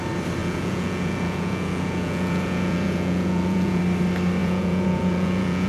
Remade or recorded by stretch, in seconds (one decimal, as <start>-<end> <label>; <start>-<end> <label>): 0.0-0.4 recorded; 0.4-3.8 remade; 3.8-4.4 recorded; 4.4-5.7 remade